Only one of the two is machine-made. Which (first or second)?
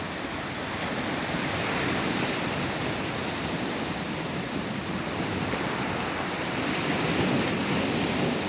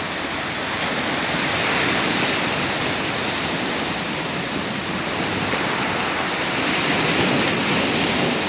first